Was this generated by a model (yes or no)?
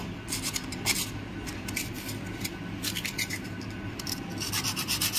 no